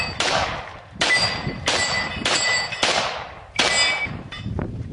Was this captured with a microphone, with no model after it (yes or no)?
no